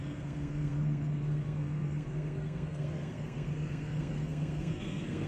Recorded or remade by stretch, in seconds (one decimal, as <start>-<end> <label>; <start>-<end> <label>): 0.0-5.3 remade

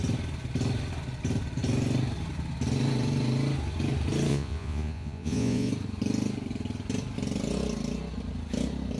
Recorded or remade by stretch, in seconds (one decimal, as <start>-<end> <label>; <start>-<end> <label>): 0.0-4.3 recorded; 4.3-5.7 remade; 5.7-9.0 recorded

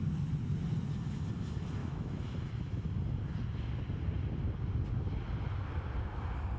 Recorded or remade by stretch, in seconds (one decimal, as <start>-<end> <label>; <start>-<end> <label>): 0.0-1.8 recorded; 1.8-2.9 remade; 2.9-6.6 recorded

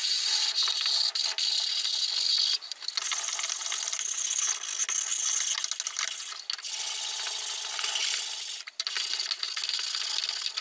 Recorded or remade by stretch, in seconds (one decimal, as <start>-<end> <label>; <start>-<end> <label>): 0.0-1.0 remade; 1.0-10.6 recorded

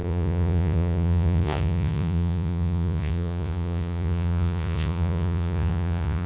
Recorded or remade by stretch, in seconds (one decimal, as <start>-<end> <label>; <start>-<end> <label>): 0.0-6.3 remade

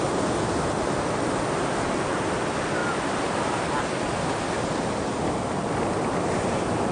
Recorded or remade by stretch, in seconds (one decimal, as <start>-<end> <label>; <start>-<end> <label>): 0.0-2.8 recorded; 2.8-3.7 remade; 3.7-6.9 recorded

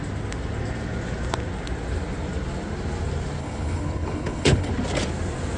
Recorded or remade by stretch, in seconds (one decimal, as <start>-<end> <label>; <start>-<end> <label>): 0.0-3.4 recorded; 3.4-4.7 remade; 4.7-5.6 recorded